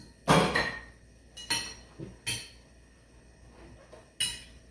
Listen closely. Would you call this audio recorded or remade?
recorded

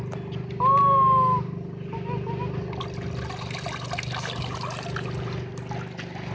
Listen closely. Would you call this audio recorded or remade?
recorded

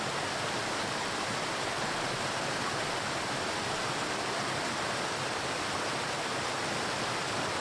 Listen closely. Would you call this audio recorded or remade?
recorded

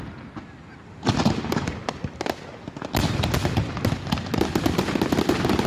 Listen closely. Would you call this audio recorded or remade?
recorded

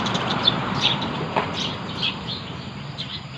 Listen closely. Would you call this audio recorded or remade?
remade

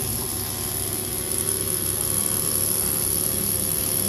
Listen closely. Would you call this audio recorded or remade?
recorded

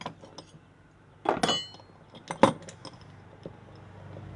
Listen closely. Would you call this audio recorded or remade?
recorded